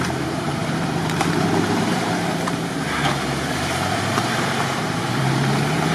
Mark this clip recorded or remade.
remade